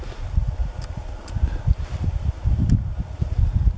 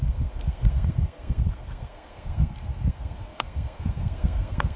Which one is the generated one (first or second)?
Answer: second